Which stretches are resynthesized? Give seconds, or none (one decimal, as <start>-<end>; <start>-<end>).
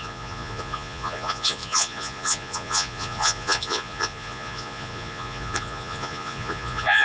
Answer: 0.0-7.0